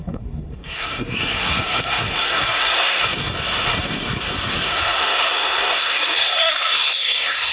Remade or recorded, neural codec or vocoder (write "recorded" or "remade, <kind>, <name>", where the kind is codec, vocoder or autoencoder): remade, codec, SNAC